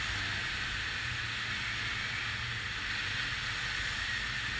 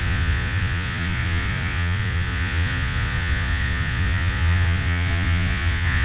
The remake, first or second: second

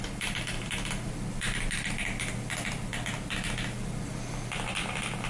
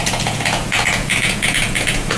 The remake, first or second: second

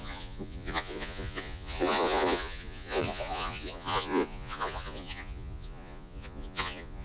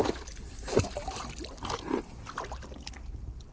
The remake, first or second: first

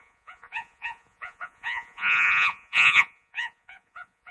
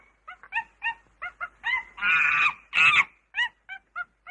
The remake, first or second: first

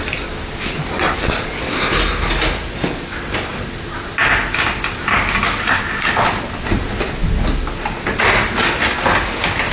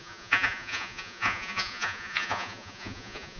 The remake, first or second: second